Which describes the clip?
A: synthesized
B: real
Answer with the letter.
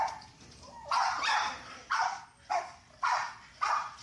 A